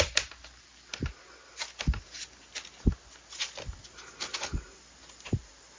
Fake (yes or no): no